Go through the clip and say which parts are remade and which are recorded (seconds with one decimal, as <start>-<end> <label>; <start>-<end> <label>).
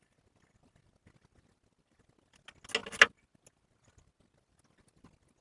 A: 0.0-5.4 recorded